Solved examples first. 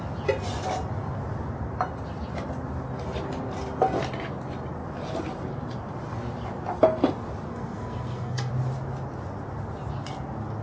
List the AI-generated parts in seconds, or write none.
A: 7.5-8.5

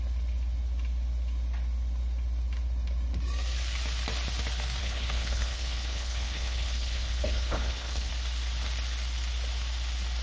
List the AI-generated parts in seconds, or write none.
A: 4.8-8.1

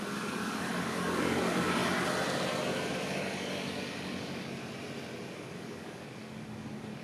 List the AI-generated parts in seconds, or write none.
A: 0.0-1.8; 2.9-4.6; 5.3-7.0

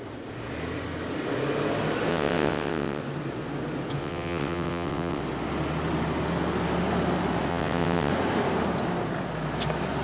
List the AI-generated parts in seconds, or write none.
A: 2.1-3.0; 4.0-5.2; 7.5-8.1

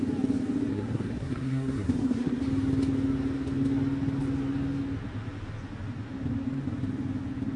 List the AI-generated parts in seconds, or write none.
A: 0.7-2.4